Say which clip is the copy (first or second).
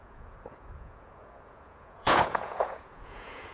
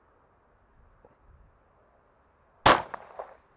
first